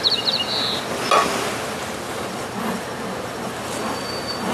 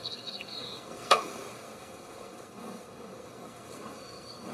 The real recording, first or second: first